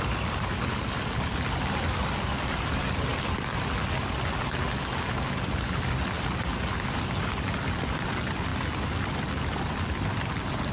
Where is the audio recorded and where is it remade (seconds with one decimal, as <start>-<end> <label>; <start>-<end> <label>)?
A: 0.0-3.1 remade; 3.1-5.9 recorded; 5.9-6.5 remade; 6.5-7.0 recorded; 7.0-10.7 remade